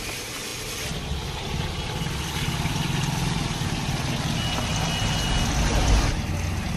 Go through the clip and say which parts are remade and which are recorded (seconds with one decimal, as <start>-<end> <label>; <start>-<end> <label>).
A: 0.0-6.8 recorded